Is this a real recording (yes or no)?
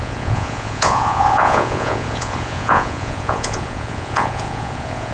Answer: no